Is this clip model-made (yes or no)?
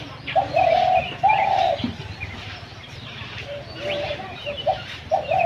yes